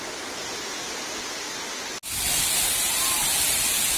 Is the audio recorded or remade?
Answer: recorded